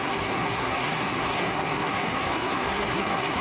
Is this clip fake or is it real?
fake